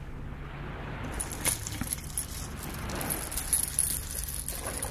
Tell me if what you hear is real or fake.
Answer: real